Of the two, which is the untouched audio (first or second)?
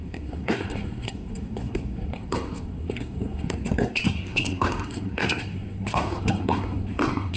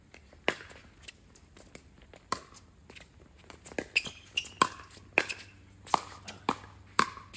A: second